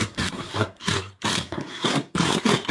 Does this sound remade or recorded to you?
remade